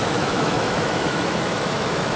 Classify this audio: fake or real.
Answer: fake